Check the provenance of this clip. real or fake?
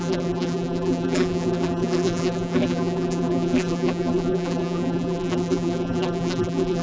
fake